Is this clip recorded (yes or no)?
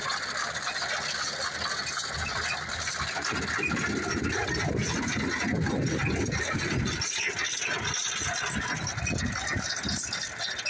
yes